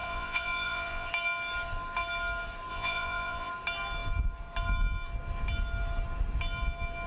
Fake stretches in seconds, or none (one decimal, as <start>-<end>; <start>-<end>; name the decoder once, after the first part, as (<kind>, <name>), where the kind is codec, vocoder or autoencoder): 0.0-1.1 (vocoder, Vocos); 2.7-3.5